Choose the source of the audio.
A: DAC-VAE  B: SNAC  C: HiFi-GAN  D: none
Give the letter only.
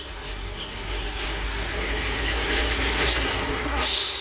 B